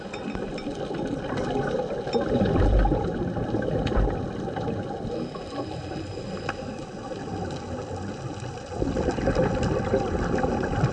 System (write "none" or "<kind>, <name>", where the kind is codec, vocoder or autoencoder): none